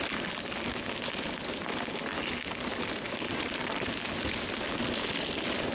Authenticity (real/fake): real